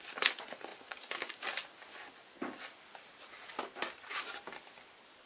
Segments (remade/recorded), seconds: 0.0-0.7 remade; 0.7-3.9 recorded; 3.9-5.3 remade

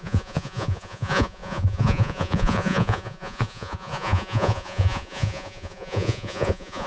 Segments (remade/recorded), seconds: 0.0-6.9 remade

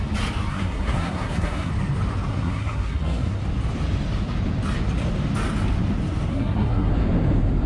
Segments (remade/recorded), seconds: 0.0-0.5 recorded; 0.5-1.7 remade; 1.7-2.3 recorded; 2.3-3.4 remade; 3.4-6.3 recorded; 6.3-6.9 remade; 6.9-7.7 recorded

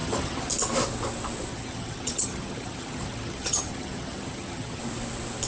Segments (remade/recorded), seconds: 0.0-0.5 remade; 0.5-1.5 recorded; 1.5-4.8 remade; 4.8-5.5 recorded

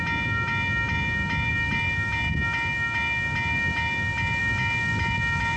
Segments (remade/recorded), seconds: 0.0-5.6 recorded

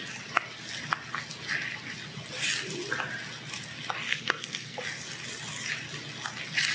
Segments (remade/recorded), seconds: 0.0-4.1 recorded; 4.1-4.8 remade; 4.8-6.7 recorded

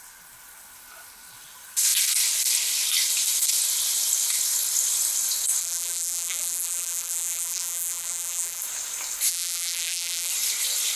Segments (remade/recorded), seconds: 0.0-5.6 recorded; 5.6-8.6 remade; 8.6-9.3 recorded; 9.3-10.3 remade; 10.3-11.0 recorded

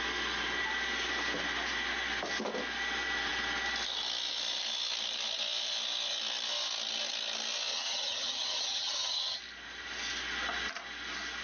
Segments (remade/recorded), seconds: 0.0-7.7 recorded; 7.7-9.4 remade; 9.4-11.4 recorded